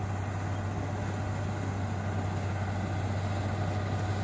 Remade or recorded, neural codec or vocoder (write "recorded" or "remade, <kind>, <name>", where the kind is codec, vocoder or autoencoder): recorded